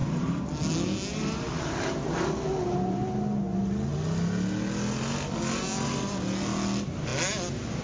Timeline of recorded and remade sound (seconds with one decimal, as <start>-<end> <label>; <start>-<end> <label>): 0.0-7.8 recorded